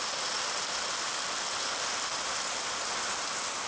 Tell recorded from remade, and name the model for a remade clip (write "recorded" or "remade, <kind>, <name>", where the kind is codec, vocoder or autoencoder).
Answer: recorded